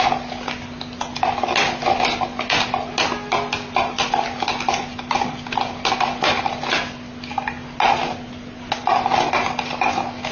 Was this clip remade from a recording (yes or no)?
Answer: no